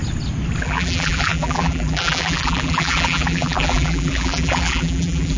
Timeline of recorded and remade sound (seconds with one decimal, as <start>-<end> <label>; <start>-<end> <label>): 0.0-0.6 recorded; 0.6-5.4 remade